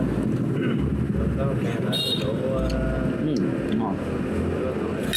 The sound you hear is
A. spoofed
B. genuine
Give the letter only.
B